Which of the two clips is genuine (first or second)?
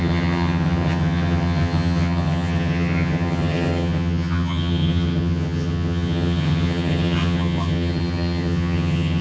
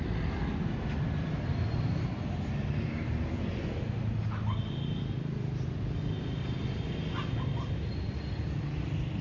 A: second